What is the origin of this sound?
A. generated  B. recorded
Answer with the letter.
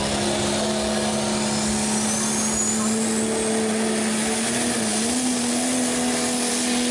B